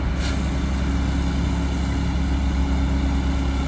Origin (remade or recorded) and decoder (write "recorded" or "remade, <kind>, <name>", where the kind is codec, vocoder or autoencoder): recorded